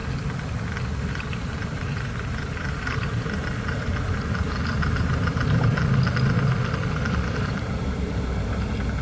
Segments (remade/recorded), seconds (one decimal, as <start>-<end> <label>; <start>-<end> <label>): 0.0-1.1 recorded; 1.1-5.8 remade; 5.8-7.3 recorded; 7.3-9.0 remade